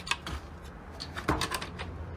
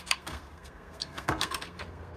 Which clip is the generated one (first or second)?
second